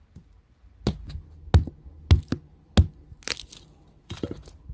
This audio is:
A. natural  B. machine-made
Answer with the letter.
A